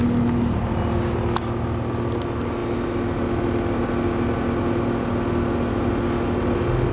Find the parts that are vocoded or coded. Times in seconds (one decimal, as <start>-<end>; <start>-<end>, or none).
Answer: none